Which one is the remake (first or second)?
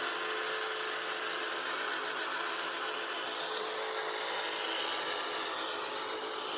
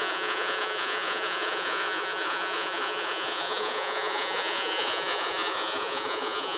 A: second